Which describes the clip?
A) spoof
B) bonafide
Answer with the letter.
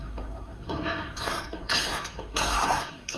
A